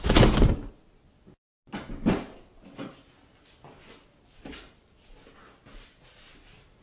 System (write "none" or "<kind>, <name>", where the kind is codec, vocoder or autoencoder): none